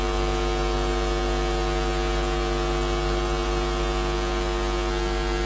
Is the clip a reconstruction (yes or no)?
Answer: no